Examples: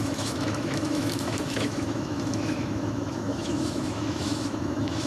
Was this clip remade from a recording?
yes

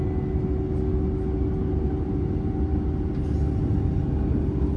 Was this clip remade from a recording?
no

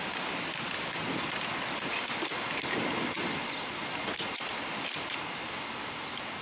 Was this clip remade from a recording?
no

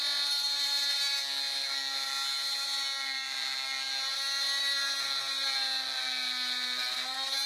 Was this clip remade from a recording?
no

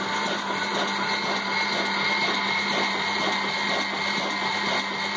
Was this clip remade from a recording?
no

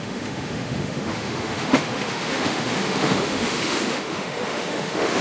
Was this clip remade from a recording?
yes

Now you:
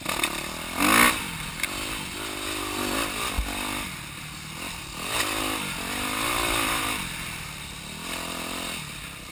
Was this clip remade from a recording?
no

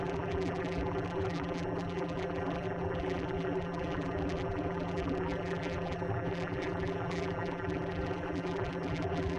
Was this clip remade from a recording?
yes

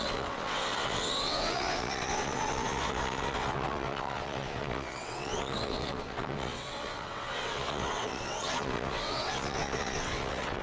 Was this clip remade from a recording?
yes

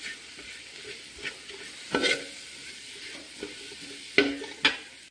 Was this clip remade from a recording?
no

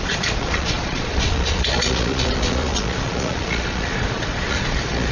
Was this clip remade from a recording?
yes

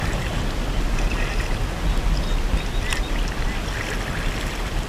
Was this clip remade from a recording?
no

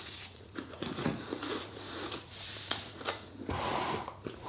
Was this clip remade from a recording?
yes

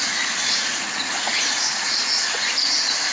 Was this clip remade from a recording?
yes